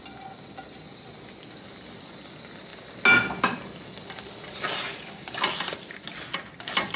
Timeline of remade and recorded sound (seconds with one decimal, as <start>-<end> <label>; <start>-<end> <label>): 0.0-7.0 recorded